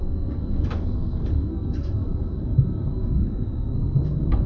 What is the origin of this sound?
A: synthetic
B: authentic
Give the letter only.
A